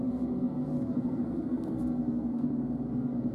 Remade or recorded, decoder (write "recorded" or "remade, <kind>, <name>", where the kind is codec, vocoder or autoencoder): remade, codec, SNAC